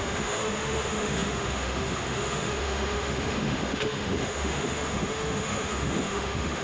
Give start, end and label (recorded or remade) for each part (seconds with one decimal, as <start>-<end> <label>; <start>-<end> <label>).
0.0-6.6 remade